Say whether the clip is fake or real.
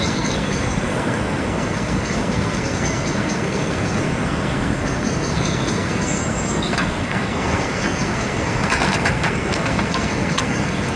fake